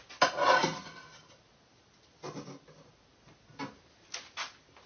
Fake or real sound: real